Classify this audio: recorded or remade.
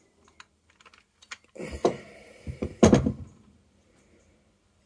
recorded